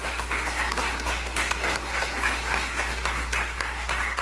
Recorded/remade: remade